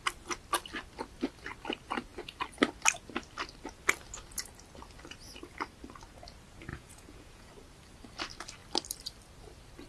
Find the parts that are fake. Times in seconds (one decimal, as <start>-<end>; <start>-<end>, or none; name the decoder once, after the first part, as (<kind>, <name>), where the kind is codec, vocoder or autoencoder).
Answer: 6.7-7.5 (vocoder, Vocos)